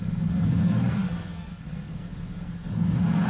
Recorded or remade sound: remade